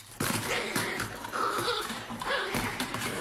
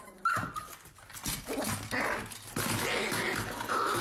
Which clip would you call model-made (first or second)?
first